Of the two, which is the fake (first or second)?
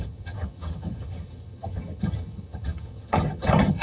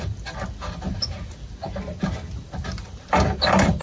first